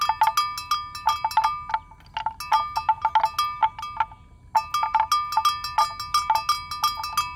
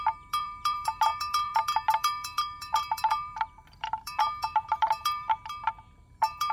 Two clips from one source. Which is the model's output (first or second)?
second